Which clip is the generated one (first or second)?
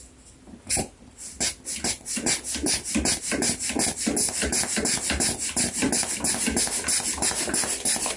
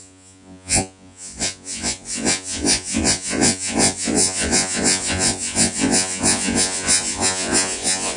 second